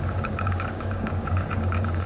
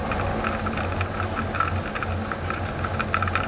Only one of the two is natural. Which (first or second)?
second